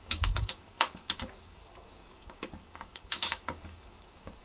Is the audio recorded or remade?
remade